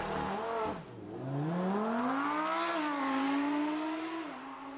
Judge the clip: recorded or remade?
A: recorded